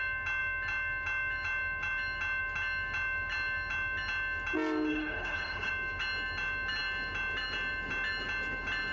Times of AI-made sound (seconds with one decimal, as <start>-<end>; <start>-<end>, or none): 4.9-5.7